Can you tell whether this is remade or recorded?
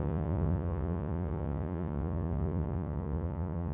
remade